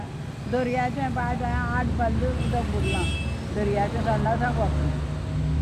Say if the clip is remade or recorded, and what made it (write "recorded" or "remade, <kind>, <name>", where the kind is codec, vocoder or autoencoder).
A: recorded